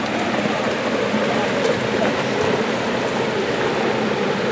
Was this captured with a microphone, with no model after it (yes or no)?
yes